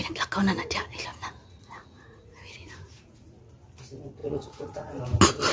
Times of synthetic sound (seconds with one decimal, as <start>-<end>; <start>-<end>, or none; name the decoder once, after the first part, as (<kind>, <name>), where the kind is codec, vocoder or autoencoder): 1.1-3.4 (vocoder, Vocos); 4.2-5.0